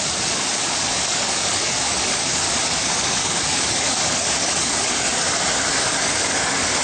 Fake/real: fake